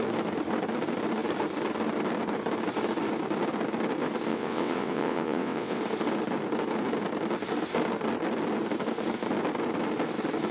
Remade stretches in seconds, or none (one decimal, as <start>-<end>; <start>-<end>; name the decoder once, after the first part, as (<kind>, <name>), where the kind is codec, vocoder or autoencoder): 4.3-5.8 (vocoder, WaveNeXt)